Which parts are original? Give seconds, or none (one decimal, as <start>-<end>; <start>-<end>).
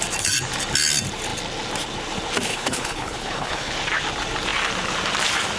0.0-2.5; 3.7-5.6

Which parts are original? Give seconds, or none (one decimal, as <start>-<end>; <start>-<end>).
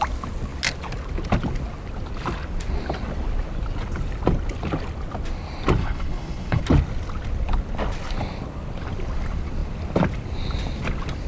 0.0-5.8; 6.6-11.3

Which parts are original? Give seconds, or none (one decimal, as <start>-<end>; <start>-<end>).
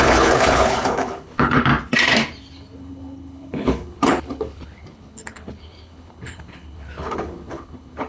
1.7-2.6